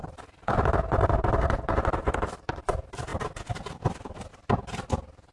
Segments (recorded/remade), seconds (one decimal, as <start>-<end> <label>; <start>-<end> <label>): 0.0-3.1 remade; 3.1-4.3 recorded; 4.3-5.3 remade